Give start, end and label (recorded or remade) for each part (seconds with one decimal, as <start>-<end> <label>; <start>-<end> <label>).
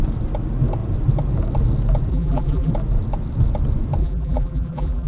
0.0-2.1 recorded; 2.1-2.7 remade; 2.7-4.0 recorded; 4.0-5.1 remade